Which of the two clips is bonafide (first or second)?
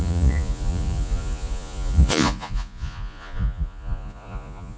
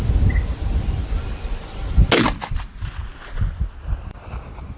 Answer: second